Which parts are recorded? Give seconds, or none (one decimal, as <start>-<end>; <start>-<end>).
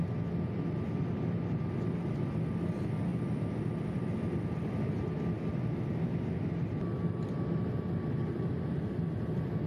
0.0-9.7